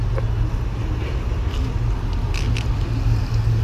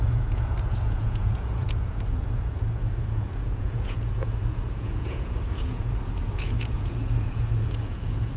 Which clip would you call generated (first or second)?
second